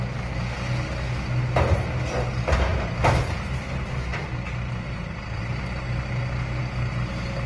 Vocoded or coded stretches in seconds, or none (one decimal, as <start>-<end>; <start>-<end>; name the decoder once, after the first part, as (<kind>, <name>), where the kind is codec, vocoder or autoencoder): 4.1-5.4 (vocoder, BigVGAN v2)